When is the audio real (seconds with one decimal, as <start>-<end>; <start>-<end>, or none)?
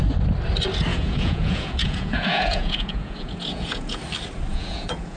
0.0-0.9; 4.0-4.5